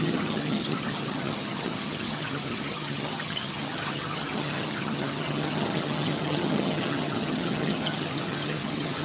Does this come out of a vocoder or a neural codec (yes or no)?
yes